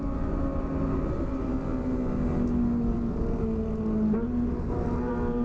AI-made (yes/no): no